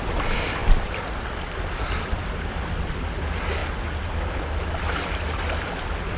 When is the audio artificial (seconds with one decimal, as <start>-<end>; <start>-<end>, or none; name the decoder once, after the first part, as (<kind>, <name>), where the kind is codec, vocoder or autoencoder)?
0.6-3.2 (vocoder, BigVGAN v2)